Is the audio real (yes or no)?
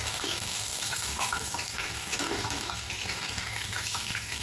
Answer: no